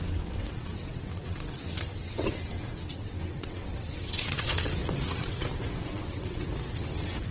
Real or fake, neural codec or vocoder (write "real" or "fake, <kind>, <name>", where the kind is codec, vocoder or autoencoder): fake, vocoder, WaveNeXt